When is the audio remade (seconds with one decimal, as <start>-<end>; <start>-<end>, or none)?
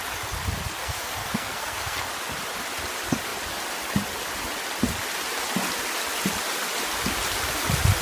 0.8-2.0